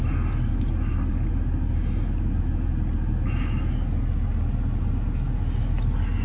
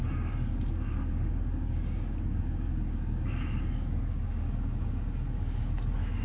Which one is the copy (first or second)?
second